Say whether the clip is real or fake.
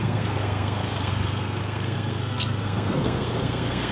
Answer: fake